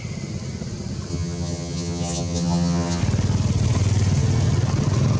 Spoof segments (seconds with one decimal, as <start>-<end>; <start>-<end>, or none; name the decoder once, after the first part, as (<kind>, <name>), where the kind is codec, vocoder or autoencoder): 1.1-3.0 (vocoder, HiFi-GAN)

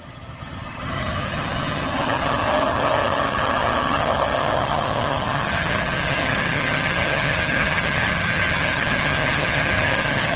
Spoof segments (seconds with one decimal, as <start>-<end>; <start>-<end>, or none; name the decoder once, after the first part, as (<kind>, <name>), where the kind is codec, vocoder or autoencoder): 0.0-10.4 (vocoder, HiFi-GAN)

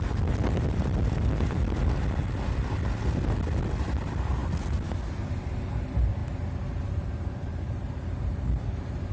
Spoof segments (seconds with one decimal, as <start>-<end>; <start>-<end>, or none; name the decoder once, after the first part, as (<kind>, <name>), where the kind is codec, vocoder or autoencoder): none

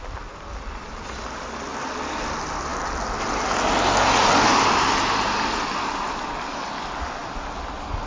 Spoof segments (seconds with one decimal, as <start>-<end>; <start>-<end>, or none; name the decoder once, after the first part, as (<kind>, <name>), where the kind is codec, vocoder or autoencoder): none